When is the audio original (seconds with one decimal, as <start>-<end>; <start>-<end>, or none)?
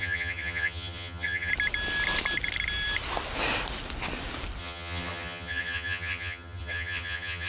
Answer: 1.5-4.6